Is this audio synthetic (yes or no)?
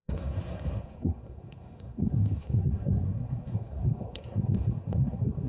yes